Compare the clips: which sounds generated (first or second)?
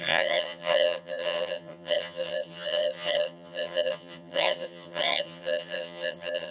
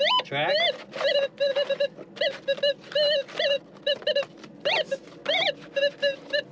first